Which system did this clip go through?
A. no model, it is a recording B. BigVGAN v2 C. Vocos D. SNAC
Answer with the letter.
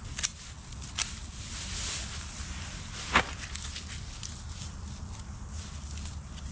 A